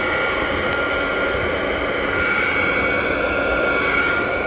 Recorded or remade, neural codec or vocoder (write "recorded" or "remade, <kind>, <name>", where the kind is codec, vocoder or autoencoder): recorded